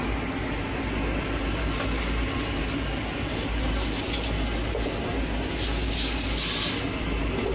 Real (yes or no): yes